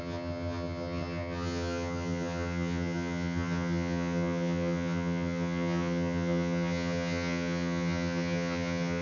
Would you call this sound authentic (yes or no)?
no